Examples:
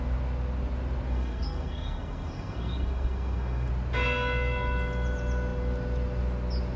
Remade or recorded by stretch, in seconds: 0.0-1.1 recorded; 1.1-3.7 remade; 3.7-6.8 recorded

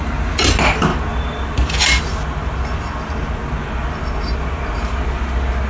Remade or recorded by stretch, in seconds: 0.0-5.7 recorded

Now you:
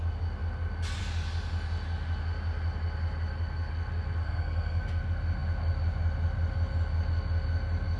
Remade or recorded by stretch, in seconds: 0.0-4.2 recorded; 4.2-5.0 remade; 5.0-8.0 recorded

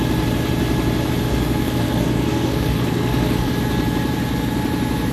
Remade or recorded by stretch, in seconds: 0.0-1.3 recorded; 1.3-3.5 remade; 3.5-5.1 recorded

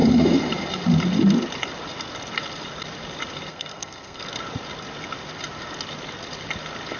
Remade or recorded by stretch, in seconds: 0.0-3.5 recorded; 3.5-4.2 remade; 4.2-7.0 recorded

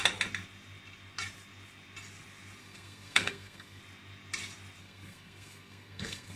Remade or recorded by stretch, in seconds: 0.0-2.6 recorded; 2.6-3.8 remade; 3.8-4.8 recorded; 4.8-6.4 remade